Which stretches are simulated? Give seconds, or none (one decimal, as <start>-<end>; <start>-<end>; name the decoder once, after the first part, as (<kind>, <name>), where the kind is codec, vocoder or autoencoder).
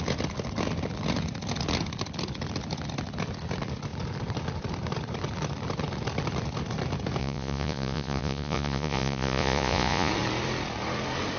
7.2-10.1 (vocoder, Vocos)